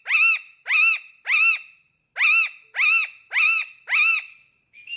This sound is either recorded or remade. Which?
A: recorded